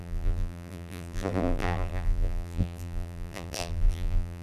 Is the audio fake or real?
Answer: fake